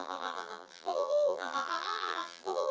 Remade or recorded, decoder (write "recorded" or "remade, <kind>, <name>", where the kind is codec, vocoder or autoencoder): remade, vocoder, BigVGAN v2